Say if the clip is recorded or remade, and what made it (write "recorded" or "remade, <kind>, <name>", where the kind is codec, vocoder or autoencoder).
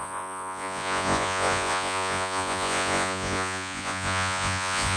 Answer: remade, vocoder, Vocos